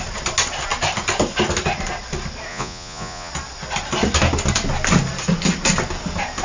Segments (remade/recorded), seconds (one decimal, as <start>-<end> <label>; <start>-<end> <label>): 0.0-2.5 recorded; 2.5-3.3 remade; 3.3-6.4 recorded